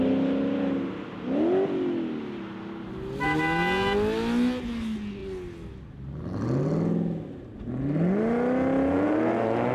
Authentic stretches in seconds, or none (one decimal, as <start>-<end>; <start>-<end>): 0.0-9.7